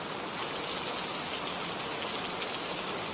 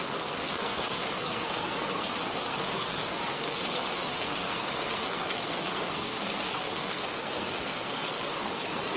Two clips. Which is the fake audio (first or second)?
second